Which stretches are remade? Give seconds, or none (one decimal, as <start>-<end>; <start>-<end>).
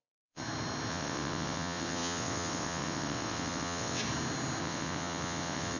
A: 0.0-0.4; 0.9-4.0; 4.6-5.8